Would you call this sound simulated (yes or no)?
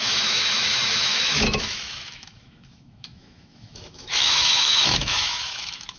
yes